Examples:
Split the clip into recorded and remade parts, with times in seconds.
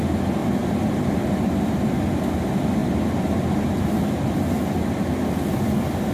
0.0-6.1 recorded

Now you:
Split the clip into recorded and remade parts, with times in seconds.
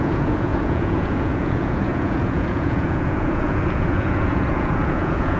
0.0-5.4 remade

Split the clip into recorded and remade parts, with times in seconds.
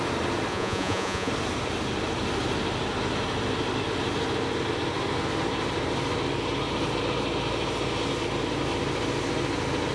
0.0-0.5 recorded; 0.5-1.3 remade; 1.3-9.9 recorded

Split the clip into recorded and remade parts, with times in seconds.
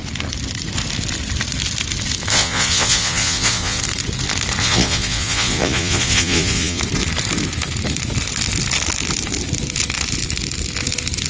0.0-2.3 recorded; 2.3-3.8 remade; 3.8-4.6 recorded; 4.6-6.8 remade; 6.8-11.3 recorded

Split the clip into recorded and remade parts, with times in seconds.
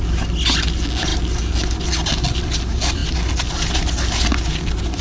0.0-5.0 recorded